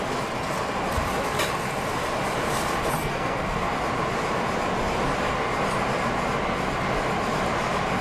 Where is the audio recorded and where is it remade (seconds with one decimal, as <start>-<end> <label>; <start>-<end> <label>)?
0.0-3.0 recorded; 3.0-3.7 remade; 3.7-8.0 recorded